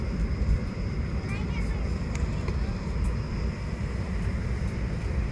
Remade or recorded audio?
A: recorded